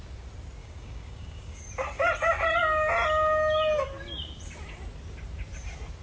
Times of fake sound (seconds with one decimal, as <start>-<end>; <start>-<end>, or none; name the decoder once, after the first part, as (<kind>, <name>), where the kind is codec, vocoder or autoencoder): 0.6-1.6 (codec, DAC)